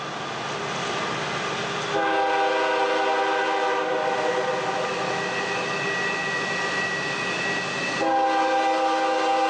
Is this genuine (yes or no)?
yes